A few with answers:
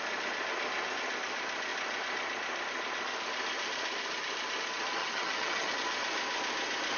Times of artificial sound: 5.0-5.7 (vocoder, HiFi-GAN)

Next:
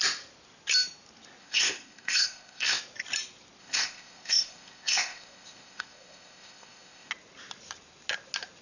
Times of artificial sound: 1.4-2.8 (codec, ZipCodec); 3.6-7.1

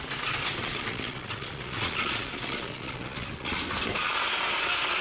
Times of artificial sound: 0.6-3.6 (vocoder, Vocos)

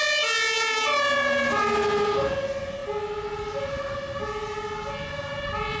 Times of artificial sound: none

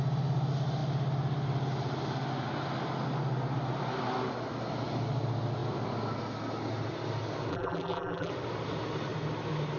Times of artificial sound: 7.5-8.3 (vocoder, BigVGAN v2)

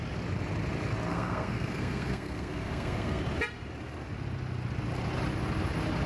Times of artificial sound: 1.1-3.2 (codec, SNAC)

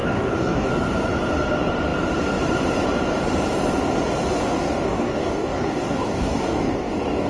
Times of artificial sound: 0.0-0.7 (codec, DAC); 4.4-7.3

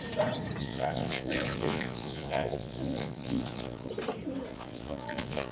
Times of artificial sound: 0.6-3.9 (vocoder, Vocos); 4.5-5.5